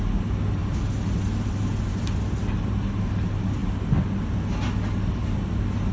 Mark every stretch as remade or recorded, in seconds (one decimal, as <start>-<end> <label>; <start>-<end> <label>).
0.0-5.9 recorded